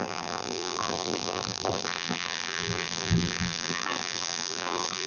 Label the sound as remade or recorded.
remade